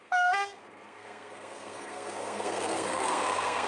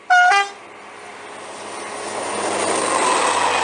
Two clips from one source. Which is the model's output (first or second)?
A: first